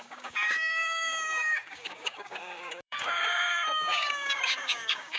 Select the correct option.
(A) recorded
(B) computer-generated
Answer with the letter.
B